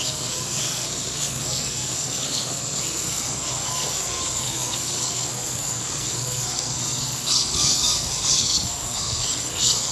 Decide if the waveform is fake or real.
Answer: fake